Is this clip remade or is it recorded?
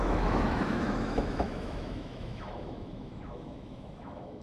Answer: remade